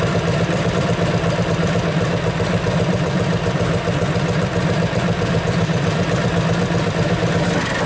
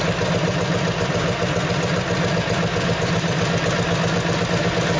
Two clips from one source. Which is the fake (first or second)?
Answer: first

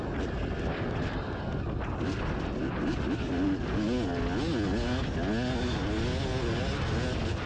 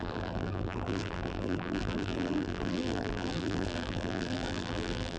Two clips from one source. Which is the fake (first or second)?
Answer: second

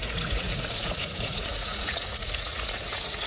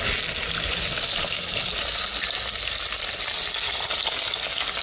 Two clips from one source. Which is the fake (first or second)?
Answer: first